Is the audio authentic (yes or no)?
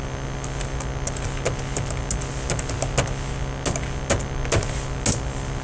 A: yes